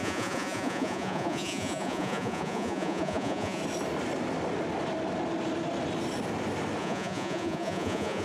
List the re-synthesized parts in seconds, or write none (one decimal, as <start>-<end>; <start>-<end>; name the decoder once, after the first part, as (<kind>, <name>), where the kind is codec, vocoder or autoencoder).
0.0-3.6 (vocoder, Vocos); 6.8-8.2